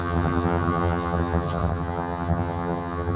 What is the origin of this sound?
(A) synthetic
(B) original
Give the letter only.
A